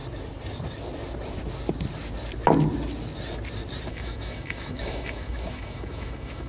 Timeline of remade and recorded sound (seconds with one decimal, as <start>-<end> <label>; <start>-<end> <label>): 0.0-3.9 recorded; 3.9-6.5 remade